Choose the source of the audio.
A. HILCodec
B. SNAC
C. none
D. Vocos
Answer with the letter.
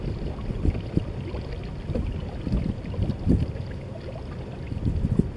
C